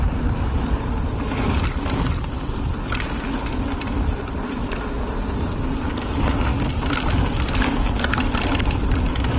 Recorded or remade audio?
recorded